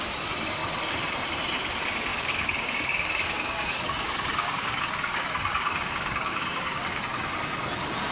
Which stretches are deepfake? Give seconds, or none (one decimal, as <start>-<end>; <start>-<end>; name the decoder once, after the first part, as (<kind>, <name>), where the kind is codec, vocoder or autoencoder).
2.1-7.0 (codec, DAC)